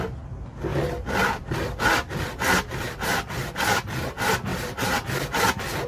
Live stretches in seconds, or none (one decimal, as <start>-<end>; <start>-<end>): 0.0-0.7; 3.5-4.5; 5.4-5.9